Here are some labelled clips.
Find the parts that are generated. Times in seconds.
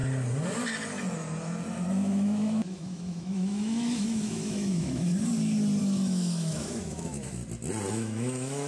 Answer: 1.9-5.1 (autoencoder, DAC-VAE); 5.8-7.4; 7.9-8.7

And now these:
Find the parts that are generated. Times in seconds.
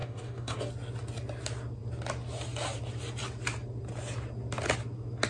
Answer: 0.0-0.7 (codec, DAC)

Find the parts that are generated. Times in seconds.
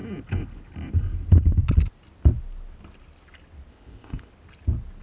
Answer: 3.7-4.3 (codec, ZipCodec)